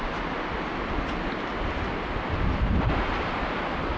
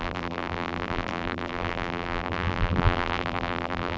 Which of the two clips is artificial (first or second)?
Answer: second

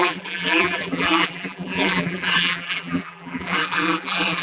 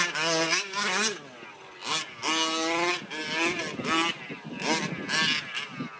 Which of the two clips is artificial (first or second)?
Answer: first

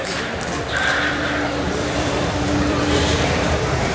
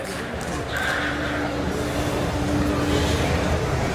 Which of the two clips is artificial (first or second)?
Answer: first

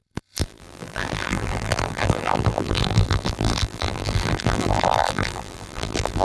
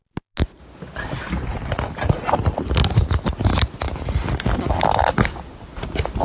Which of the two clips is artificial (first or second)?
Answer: first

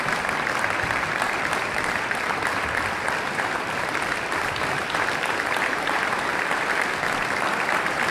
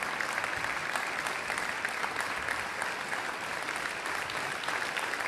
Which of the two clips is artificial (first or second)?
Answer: first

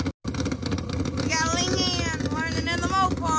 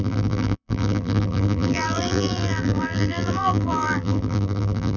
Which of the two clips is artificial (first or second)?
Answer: second